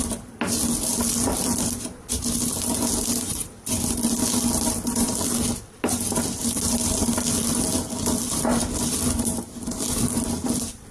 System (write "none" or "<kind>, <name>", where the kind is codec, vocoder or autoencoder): none